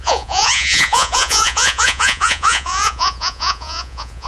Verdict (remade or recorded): remade